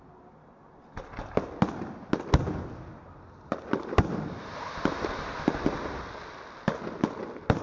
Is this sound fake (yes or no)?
no